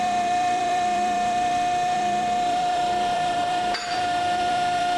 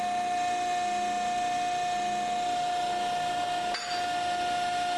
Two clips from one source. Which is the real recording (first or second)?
second